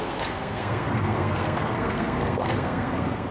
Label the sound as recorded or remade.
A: remade